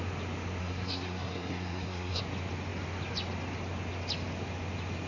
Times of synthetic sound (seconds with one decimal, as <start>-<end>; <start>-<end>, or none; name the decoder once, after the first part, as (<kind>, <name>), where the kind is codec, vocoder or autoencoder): 0.6-2.2 (codec, SNAC)